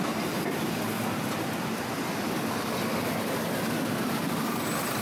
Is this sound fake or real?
real